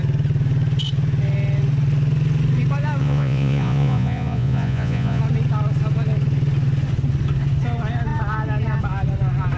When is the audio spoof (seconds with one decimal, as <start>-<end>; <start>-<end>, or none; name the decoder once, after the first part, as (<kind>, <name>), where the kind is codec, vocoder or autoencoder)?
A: 3.0-5.2 (vocoder, Vocos)